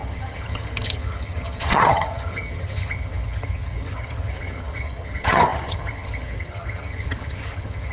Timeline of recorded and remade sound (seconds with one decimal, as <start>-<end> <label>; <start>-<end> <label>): 0.0-7.9 remade